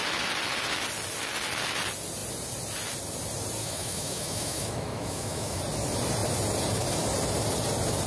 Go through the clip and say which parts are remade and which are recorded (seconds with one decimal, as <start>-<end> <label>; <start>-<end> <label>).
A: 0.0-3.6 recorded; 3.6-5.6 remade; 5.6-8.1 recorded